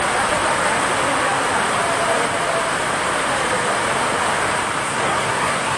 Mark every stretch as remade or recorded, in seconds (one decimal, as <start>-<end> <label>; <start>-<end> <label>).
0.0-4.8 recorded; 4.8-5.8 remade